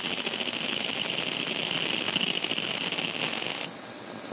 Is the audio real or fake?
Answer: real